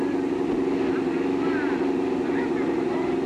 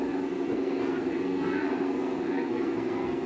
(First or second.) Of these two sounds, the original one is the first